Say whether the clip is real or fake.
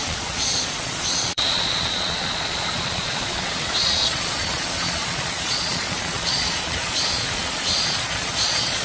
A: fake